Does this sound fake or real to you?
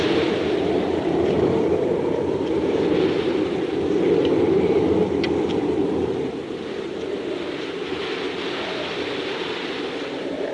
real